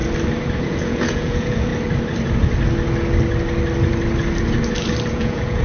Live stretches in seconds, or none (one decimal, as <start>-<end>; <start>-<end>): 0.0-0.6; 1.7-5.1

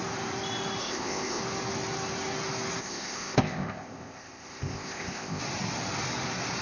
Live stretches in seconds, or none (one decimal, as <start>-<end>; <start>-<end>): 0.0-0.8; 1.4-2.8; 5.4-6.6

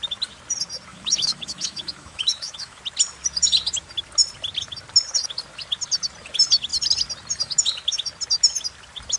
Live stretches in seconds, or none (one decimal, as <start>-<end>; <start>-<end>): 0.0-0.9; 2.8-9.2